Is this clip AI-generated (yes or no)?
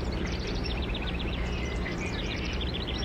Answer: yes